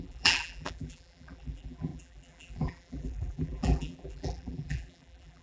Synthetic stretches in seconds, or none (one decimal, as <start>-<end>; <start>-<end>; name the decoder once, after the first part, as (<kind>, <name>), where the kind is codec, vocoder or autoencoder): 0.0-5.4 (vocoder, BigVGAN v2)